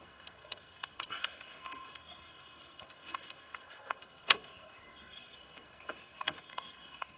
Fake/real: fake